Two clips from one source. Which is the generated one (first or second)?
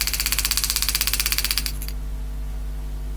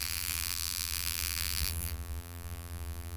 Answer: second